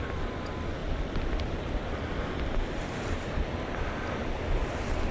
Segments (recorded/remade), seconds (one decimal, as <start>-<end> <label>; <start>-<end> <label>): 0.0-5.1 recorded

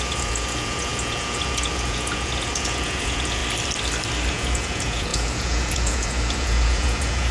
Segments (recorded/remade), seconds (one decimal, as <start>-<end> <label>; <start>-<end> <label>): 0.0-3.4 remade; 3.4-4.3 recorded; 4.3-7.3 remade

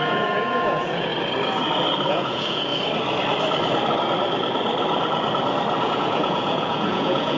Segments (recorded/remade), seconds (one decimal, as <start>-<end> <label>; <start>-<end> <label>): 0.0-1.1 remade; 1.1-2.1 recorded; 2.1-2.7 remade; 2.7-5.8 recorded; 5.8-7.4 remade

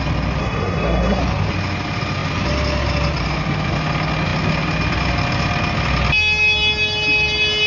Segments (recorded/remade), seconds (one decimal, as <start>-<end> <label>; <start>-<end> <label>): 0.0-0.4 recorded; 0.4-1.2 remade; 1.2-7.7 recorded

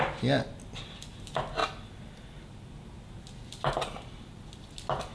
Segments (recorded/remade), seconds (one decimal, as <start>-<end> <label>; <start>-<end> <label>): 0.0-5.1 recorded

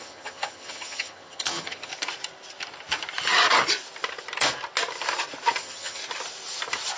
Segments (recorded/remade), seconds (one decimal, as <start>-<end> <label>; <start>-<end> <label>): 0.0-1.9 remade; 1.9-5.6 recorded; 5.6-6.0 remade; 6.0-7.0 recorded

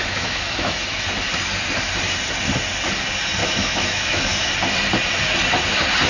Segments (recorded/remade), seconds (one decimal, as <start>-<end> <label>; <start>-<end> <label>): 0.0-0.7 remade; 0.7-3.4 recorded; 3.4-4.5 remade; 4.5-6.1 recorded